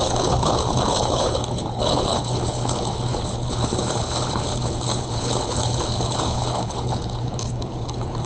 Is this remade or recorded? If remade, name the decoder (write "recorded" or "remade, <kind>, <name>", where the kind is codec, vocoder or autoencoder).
remade, codec, HILCodec